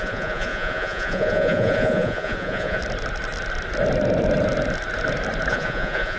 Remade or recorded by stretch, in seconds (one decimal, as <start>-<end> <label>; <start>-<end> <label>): 0.0-2.8 remade; 2.8-5.5 recorded; 5.5-6.2 remade